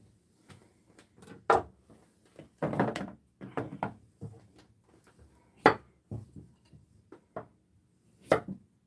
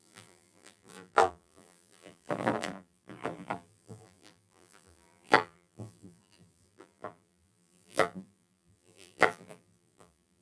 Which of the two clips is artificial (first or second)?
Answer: second